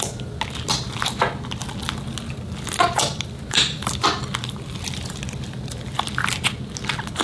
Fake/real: real